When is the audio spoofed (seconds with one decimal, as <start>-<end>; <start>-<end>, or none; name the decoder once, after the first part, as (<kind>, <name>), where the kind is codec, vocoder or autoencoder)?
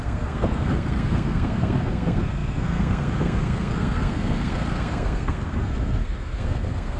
0.0-7.0 (codec, SNAC)